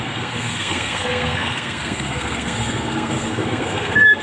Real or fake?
fake